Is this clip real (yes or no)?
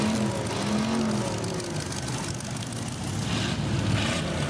yes